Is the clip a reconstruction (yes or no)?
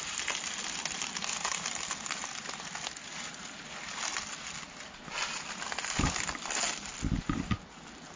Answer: no